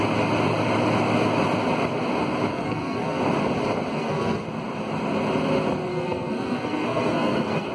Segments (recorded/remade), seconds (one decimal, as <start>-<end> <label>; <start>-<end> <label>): 0.0-2.5 recorded; 2.5-3.2 remade; 3.2-3.9 recorded; 3.9-4.4 remade; 4.4-5.9 recorded; 5.9-7.7 remade